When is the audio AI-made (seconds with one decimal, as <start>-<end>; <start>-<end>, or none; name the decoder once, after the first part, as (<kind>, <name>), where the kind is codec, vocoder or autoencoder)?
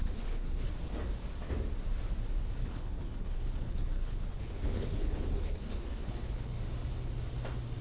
0.0-0.7 (codec, HILCodec); 2.6-6.6